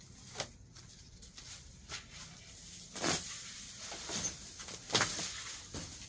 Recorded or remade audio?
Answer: recorded